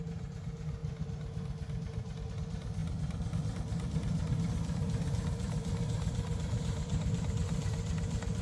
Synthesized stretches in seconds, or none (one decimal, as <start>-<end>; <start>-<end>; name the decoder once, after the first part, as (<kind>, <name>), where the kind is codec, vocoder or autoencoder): none